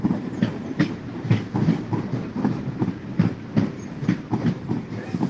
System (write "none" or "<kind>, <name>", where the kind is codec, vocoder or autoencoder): vocoder, BigVGAN v2